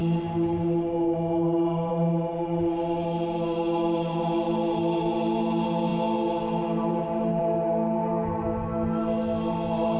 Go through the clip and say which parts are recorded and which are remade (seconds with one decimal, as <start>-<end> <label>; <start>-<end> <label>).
0.0-10.0 recorded